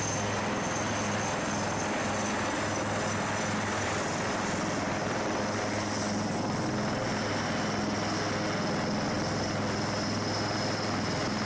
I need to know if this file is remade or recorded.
recorded